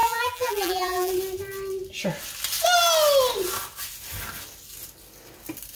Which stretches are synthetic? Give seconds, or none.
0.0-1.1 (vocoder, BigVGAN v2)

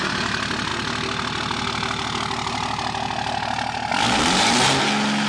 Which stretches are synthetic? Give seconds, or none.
none